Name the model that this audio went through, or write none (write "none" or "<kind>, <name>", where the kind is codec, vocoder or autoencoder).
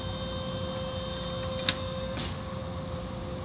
none